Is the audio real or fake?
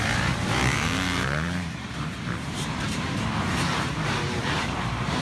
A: fake